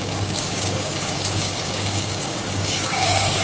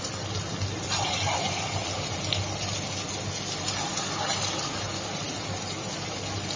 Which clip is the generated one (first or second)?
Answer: first